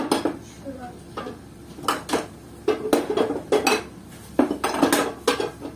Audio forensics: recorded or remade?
recorded